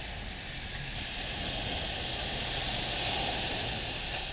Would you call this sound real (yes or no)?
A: yes